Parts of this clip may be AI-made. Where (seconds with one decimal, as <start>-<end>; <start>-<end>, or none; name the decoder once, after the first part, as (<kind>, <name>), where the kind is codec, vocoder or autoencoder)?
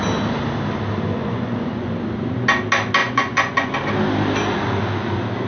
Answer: 1.1-1.9 (vocoder, Vocos); 3.0-3.7